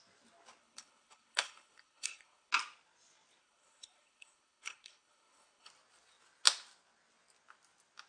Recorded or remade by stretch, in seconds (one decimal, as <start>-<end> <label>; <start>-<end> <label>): 0.0-0.6 recorded; 0.6-2.5 remade; 2.5-3.4 recorded; 3.4-5.7 remade; 5.7-8.1 recorded